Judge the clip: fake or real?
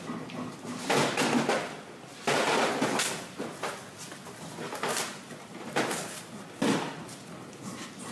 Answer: real